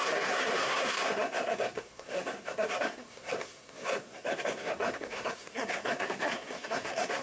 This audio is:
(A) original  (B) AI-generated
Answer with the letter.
B